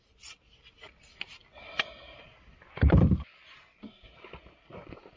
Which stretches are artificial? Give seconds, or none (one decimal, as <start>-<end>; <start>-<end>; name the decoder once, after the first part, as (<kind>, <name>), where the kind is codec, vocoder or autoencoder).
none